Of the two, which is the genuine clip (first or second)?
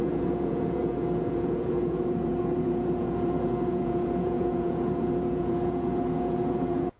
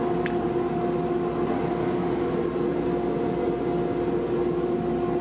second